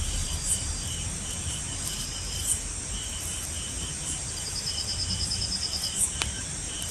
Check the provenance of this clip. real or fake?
fake